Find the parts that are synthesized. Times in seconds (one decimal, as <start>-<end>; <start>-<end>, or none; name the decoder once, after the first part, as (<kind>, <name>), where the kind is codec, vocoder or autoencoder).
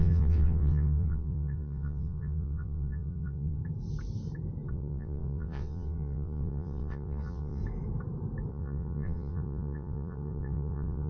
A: 0.0-3.6 (vocoder, WaveNeXt); 4.7-7.6; 8.5-11.1